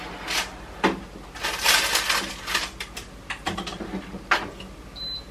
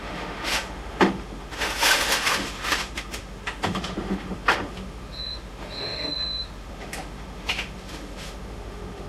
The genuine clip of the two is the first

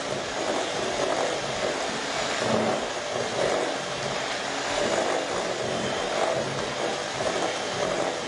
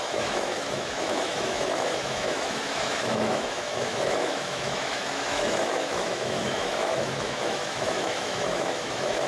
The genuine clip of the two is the first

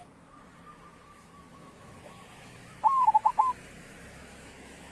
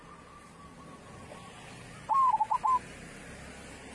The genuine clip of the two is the second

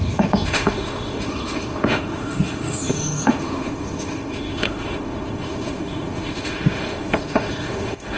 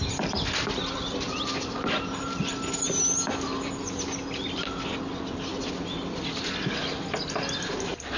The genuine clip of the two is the second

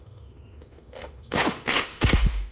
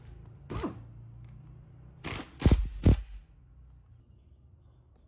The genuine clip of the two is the second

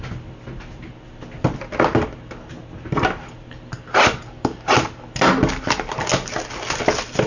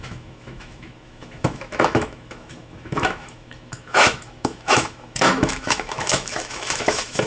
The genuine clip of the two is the first